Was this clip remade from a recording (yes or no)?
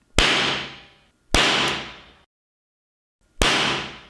no